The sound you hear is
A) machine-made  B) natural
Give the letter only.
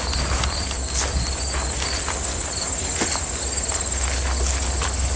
B